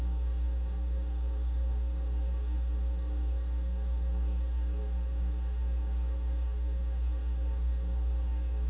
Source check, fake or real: fake